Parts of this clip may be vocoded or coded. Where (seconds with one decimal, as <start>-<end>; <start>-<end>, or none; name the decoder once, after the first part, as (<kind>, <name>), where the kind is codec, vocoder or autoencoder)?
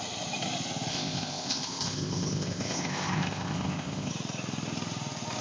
0.9-4.1 (codec, ZipCodec)